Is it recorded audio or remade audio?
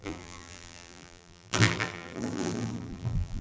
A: remade